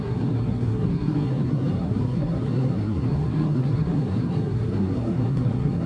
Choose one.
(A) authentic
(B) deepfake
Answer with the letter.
B